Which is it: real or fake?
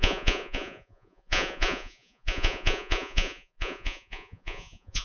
fake